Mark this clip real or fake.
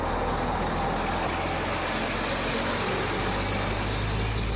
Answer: real